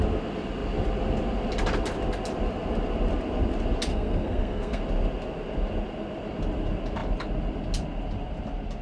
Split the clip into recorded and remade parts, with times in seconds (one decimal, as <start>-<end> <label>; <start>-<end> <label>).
0.0-3.9 recorded; 3.9-4.8 remade; 4.8-8.8 recorded